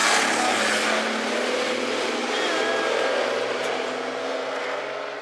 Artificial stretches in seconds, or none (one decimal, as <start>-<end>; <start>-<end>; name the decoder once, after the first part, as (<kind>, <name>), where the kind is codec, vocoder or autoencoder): 4.2-4.8 (codec, SNAC)